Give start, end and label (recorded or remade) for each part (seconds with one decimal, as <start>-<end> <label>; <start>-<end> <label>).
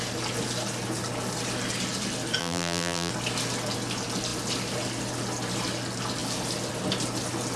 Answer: 0.0-2.4 recorded; 2.4-3.1 remade; 3.1-7.6 recorded